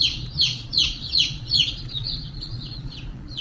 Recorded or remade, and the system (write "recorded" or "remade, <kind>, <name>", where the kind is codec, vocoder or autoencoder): remade, vocoder, Vocos